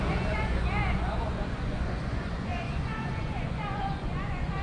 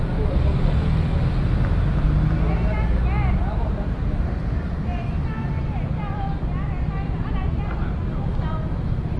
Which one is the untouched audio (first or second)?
second